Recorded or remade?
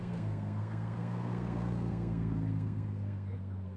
remade